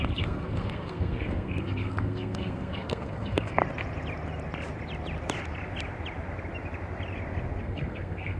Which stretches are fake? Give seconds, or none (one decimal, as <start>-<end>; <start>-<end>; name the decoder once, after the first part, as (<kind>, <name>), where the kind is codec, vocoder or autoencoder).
0.0-3.6 (codec, SNAC); 7.6-8.4